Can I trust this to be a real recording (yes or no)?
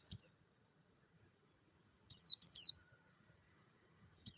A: no